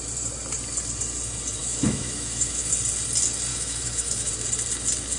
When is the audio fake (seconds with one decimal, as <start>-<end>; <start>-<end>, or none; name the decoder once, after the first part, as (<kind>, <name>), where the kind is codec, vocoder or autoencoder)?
1.6-2.7 (autoencoder, DAC-VAE); 3.5-4.3